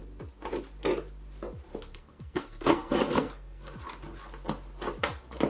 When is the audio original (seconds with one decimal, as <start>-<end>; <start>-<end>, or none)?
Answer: 0.0-1.9; 3.8-5.5